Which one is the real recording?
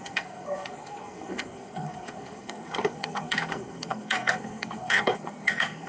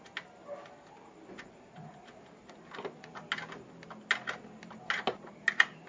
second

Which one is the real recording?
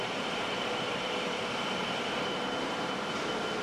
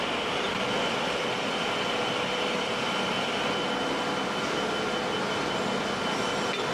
second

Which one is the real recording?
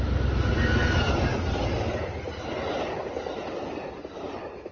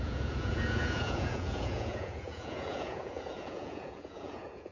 first